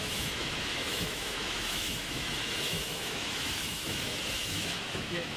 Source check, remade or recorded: remade